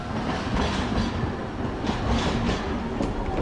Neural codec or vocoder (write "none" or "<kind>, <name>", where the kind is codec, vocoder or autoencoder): none